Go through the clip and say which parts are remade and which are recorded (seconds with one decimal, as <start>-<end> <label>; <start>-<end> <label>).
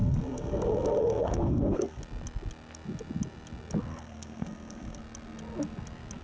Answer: 0.0-2.0 remade; 2.0-3.9 recorded; 3.9-5.0 remade; 5.0-6.2 recorded